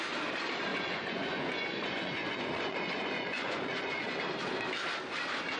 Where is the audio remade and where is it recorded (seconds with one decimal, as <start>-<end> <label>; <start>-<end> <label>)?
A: 0.0-0.7 recorded; 0.7-4.1 remade; 4.1-5.6 recorded